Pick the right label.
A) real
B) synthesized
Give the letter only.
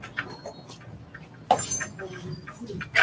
A